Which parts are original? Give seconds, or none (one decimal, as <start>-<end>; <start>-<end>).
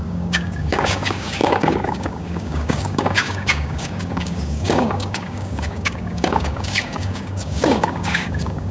none